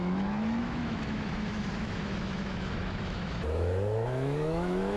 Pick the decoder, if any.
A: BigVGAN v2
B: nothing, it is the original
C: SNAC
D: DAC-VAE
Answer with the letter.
D